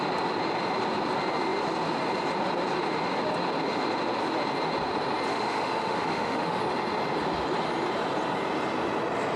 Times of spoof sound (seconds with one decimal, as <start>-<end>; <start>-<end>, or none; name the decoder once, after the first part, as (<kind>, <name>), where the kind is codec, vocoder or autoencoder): 5.3-6.6 (autoencoder, DAC-VAE)